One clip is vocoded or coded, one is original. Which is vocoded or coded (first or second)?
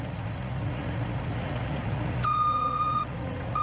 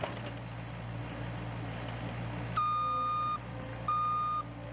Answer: first